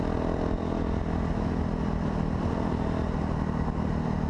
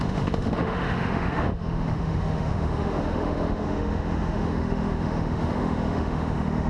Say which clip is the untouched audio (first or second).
first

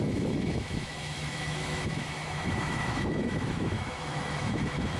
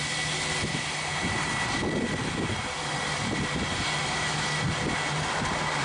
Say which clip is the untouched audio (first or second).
second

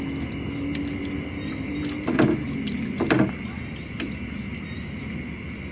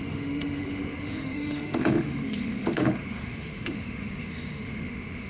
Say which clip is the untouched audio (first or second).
first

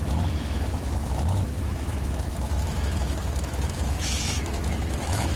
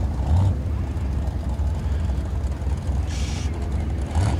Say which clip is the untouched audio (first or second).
second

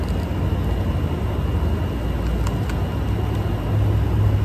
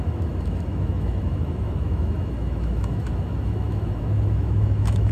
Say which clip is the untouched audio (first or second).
first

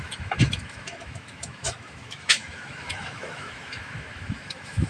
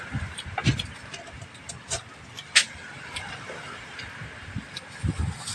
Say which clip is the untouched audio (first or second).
second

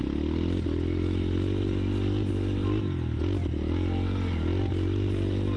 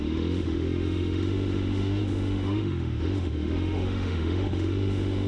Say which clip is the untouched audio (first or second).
first